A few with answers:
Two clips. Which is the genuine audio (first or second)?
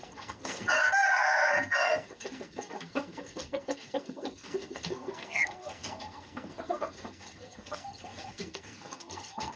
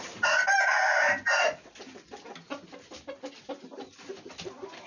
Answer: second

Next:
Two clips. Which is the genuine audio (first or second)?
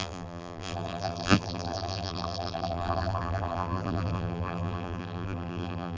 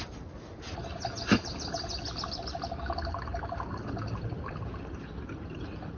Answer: second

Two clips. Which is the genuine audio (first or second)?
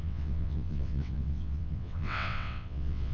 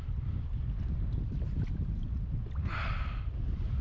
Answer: second